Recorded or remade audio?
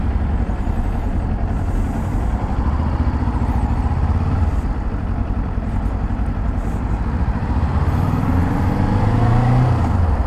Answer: recorded